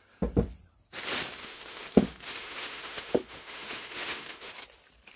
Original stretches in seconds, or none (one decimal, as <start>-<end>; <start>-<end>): 0.0-1.4; 4.5-5.2